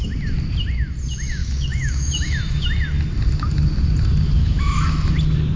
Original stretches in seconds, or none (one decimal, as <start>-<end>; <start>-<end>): 0.0-1.4; 2.7-4.4; 5.1-5.6